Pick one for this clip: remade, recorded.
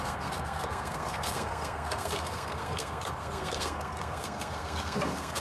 remade